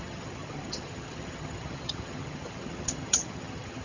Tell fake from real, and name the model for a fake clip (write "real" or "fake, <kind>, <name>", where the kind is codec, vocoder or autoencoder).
fake, vocoder, HiFi-GAN